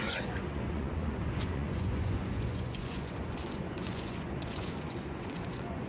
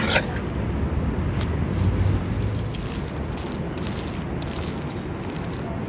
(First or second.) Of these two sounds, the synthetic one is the first